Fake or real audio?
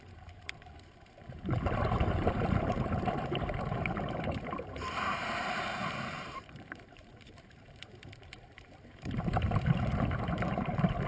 fake